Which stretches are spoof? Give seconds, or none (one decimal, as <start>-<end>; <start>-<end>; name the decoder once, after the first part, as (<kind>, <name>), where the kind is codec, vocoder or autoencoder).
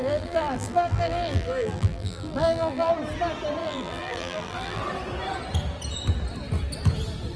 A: 0.0-2.9 (vocoder, BigVGAN v2); 3.6-4.8